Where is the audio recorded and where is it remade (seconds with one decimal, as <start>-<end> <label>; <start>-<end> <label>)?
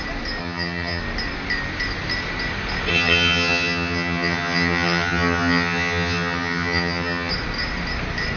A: 0.0-0.4 recorded; 0.4-1.0 remade; 1.0-2.9 recorded; 2.9-7.3 remade; 7.3-8.4 recorded